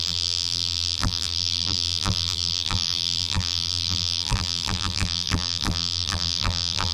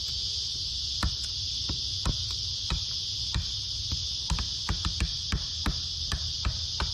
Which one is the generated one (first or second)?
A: first